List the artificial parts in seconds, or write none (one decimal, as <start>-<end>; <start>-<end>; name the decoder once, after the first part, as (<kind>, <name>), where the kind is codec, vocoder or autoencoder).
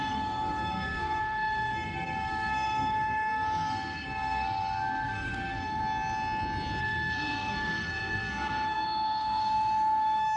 0.0-5.8 (codec, SNAC); 6.8-10.4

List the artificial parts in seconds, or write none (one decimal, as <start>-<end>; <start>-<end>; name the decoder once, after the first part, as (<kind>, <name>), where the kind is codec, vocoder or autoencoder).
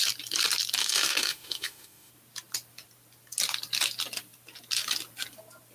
0.8-2.1 (autoencoder, DAC-VAE)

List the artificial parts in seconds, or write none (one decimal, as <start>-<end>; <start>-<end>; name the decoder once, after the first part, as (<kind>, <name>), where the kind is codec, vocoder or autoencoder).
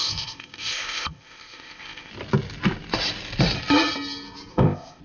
0.0-2.1 (codec, ZipCodec); 4.5-5.0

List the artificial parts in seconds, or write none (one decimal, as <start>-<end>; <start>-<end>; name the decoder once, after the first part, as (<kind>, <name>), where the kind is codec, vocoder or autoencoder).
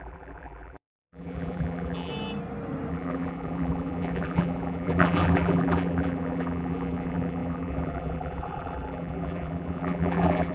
0.0-2.1 (vocoder, BigVGAN v2); 2.9-10.5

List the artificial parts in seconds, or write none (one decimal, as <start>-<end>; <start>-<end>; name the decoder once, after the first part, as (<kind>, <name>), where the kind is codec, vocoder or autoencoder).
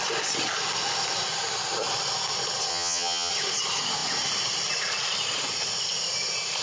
2.7-3.3 (vocoder, HiFi-GAN)